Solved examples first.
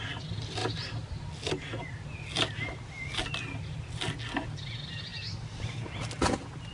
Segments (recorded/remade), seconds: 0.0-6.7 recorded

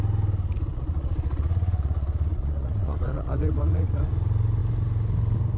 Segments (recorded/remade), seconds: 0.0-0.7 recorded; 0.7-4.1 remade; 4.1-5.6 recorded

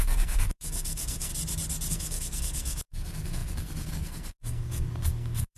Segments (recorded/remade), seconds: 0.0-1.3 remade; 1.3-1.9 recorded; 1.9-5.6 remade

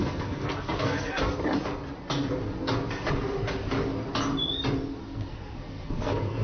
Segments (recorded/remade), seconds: 0.0-1.2 remade; 1.2-5.0 recorded; 5.0-6.4 remade

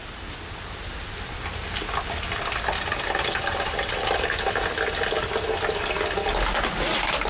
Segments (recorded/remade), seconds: 0.0-7.3 recorded